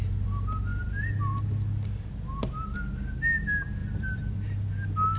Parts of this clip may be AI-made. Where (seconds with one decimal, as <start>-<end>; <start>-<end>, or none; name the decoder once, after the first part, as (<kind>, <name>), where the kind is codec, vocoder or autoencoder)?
3.8-4.4 (vocoder, BigVGAN v2)